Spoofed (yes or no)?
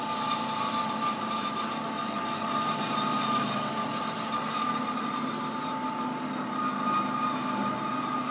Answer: no